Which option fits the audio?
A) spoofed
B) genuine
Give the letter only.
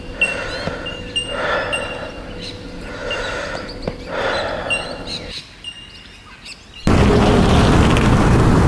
B